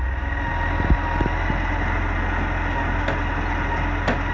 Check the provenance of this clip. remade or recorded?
recorded